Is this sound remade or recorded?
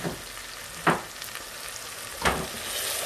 recorded